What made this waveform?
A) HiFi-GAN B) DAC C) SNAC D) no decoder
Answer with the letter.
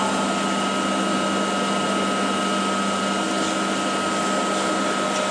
D